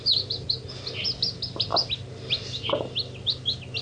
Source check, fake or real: real